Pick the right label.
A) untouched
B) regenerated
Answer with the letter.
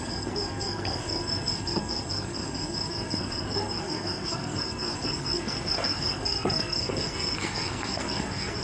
B